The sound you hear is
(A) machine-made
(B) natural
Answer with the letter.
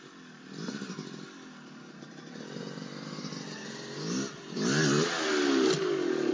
B